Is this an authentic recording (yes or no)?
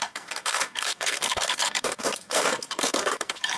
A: no